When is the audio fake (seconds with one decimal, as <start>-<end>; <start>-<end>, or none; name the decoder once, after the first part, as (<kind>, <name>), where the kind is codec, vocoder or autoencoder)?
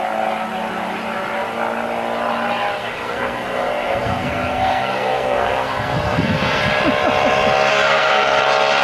2.8-6.6 (codec, SNAC); 7.7-8.4